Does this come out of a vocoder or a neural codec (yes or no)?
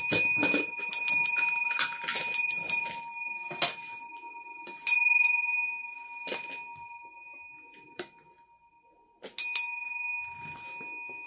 no